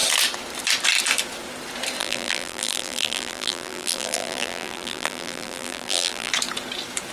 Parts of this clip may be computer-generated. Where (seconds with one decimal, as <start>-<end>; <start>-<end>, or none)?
2.0-6.3